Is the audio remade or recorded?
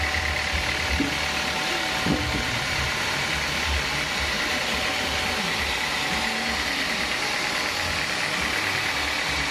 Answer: recorded